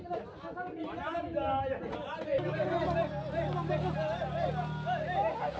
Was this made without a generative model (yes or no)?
yes